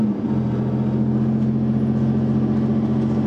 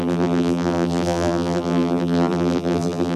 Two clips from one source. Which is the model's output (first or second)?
second